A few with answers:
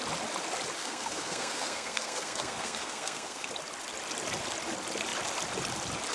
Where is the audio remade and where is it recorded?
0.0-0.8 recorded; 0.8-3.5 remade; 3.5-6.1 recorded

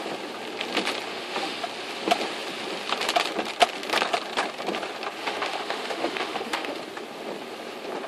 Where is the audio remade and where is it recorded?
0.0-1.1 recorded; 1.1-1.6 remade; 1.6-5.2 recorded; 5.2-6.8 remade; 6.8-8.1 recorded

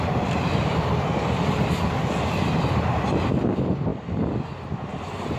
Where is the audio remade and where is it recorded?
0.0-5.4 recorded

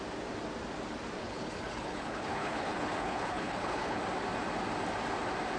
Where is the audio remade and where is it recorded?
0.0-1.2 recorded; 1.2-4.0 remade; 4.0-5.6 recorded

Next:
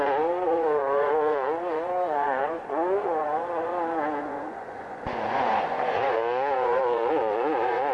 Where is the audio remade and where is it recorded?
0.0-7.9 remade